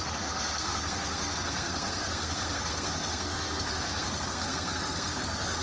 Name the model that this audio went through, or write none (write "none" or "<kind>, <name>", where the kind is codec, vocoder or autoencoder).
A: codec, SNAC